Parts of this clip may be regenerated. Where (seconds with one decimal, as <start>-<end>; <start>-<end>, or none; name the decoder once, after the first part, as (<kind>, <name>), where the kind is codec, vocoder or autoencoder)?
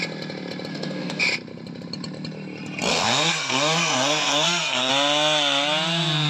0.7-1.2 (codec, SNAC); 2.9-4.9